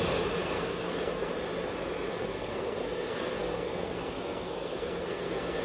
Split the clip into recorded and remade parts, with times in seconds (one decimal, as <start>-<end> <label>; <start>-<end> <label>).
0.0-0.4 recorded; 0.4-1.3 remade; 1.3-2.1 recorded; 2.1-5.6 remade